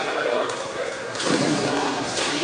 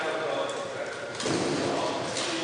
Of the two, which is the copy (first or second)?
first